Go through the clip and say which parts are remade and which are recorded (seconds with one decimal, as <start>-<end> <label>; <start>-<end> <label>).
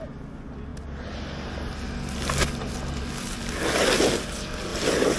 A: 0.0-5.2 recorded